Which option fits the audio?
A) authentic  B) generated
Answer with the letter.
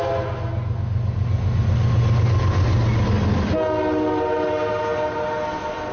A